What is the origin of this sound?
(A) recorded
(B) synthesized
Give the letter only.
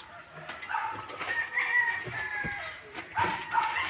A